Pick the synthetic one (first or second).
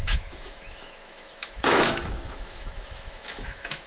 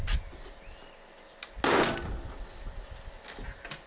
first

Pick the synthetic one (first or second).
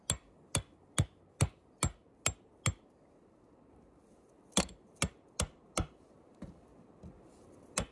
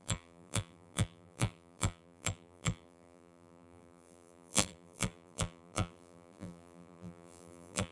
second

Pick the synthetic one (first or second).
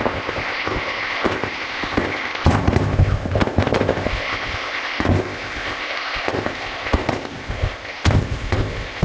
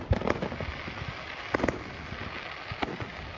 first